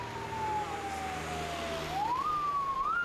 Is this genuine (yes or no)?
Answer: yes